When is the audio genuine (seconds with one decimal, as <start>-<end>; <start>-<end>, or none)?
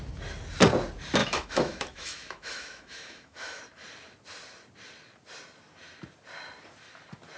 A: 0.0-1.2; 3.6-7.4